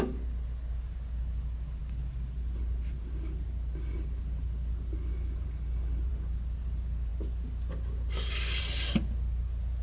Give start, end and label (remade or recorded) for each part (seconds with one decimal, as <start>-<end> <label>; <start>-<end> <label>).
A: 0.0-9.8 recorded

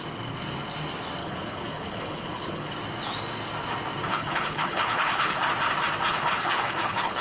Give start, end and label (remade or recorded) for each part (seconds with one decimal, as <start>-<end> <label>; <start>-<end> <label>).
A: 0.0-1.2 recorded; 1.2-2.7 remade; 2.7-4.1 recorded; 4.1-5.5 remade; 5.5-6.1 recorded; 6.1-7.2 remade